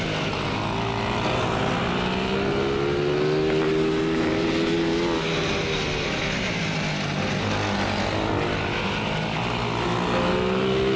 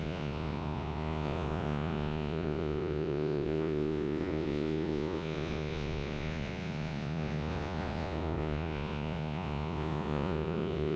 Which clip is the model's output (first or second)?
second